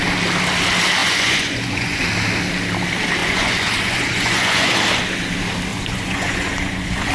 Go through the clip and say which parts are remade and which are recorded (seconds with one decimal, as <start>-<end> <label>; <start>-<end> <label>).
0.0-1.0 recorded; 1.0-2.0 remade; 2.0-3.2 recorded; 3.2-4.8 remade; 4.8-5.7 recorded; 5.7-7.1 remade